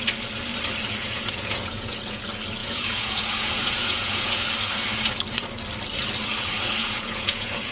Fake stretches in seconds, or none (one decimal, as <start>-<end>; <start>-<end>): 1.0-2.2; 2.6-4.5; 6.8-7.7